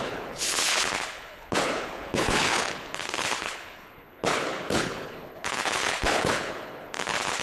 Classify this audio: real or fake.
fake